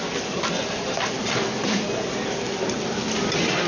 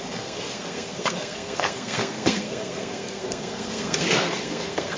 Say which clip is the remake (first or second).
second